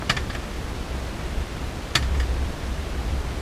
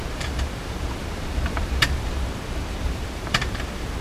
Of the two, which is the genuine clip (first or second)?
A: first